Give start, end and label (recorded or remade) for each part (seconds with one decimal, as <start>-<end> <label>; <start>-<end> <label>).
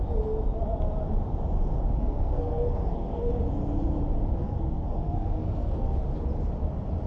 0.0-2.0 recorded; 2.0-3.3 remade; 3.3-4.4 recorded; 4.4-6.0 remade; 6.0-7.1 recorded